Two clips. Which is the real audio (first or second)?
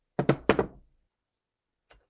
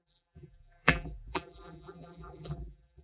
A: first